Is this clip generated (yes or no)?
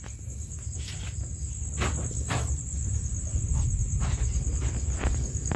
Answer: no